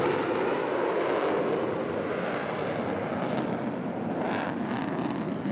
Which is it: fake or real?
real